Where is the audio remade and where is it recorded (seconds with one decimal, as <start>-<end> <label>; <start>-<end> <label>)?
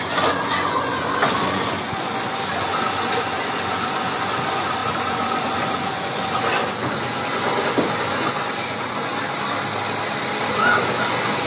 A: 0.0-9.1 remade; 9.1-10.5 recorded; 10.5-11.5 remade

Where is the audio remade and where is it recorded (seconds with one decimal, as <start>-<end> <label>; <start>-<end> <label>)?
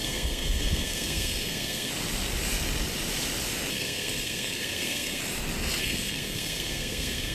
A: 0.0-1.9 remade; 1.9-3.7 recorded; 3.7-5.2 remade; 5.2-5.8 recorded; 5.8-7.3 remade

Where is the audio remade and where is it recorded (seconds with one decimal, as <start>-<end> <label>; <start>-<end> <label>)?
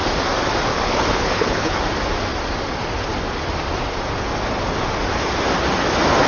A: 0.0-0.7 recorded; 0.7-1.8 remade; 1.8-6.3 recorded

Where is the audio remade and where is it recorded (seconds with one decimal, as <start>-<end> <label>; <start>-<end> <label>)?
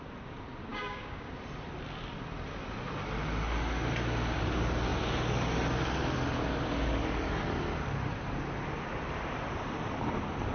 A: 0.0-0.7 recorded; 0.7-1.3 remade; 1.3-10.5 recorded